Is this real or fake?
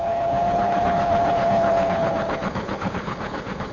fake